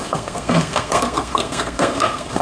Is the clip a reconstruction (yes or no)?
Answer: yes